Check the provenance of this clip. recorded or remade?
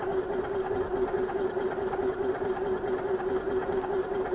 recorded